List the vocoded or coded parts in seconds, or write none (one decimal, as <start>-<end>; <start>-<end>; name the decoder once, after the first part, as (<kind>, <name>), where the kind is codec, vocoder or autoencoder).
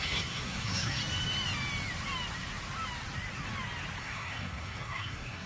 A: 0.0-1.0 (codec, SNAC); 4.0-5.5